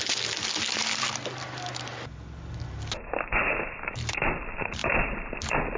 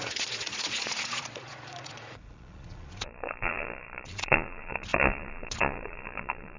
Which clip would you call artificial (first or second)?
second